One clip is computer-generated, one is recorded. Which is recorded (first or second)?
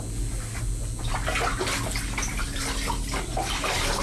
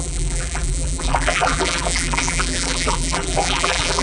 first